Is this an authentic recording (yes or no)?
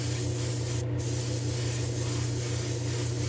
yes